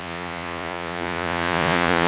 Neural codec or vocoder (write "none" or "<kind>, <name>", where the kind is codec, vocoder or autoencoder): vocoder, Vocos